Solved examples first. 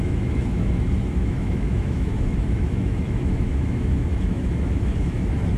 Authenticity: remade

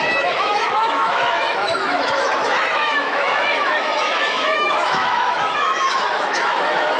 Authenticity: remade